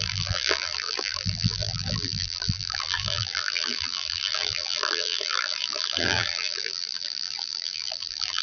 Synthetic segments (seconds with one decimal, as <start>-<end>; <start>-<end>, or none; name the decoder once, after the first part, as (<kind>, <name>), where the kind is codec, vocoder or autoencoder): 0.0-8.4 (vocoder, BigVGAN v2)